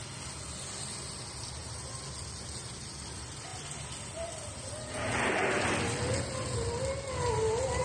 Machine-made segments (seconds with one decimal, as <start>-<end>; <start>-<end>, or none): none